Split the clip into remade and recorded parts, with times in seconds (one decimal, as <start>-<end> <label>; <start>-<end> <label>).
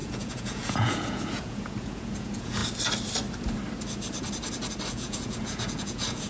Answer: 0.0-2.6 remade; 2.6-4.9 recorded; 4.9-6.3 remade